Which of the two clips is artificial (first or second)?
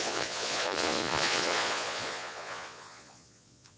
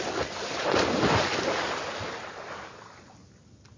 first